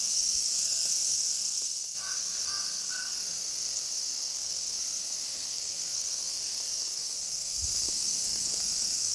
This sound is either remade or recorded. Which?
remade